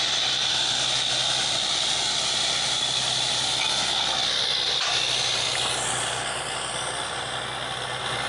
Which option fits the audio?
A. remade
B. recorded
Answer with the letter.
B